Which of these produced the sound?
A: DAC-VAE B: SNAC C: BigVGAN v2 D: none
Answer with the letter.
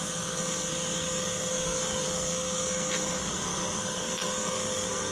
B